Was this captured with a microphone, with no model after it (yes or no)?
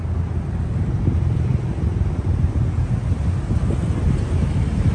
yes